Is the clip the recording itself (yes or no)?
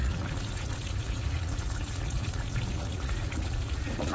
no